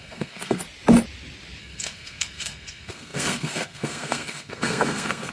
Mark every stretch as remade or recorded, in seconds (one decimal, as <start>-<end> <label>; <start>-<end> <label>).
0.0-0.6 remade; 0.6-1.6 recorded; 1.6-5.3 remade